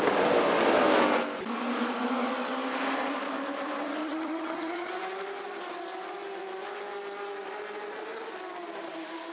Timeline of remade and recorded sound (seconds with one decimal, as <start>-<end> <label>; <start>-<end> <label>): 0.0-4.0 recorded; 4.0-4.9 remade; 4.9-9.3 recorded